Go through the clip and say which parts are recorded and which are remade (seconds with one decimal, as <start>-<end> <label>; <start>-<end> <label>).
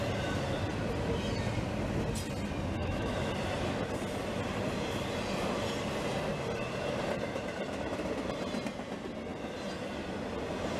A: 0.0-2.8 recorded; 2.8-3.3 remade; 3.3-10.8 recorded